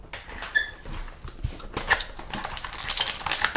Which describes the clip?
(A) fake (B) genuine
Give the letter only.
B